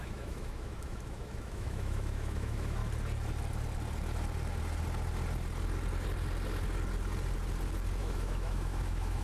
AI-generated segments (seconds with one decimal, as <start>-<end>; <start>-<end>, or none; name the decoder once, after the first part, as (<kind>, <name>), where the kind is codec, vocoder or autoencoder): 0.0-2.8 (autoencoder, DAC-VAE); 8.0-9.2